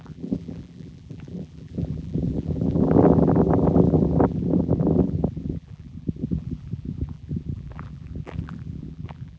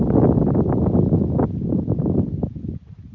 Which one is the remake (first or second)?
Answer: first